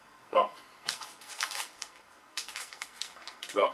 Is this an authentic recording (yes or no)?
no